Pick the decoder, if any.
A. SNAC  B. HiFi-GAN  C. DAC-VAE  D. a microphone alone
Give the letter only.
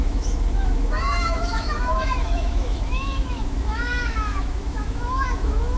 C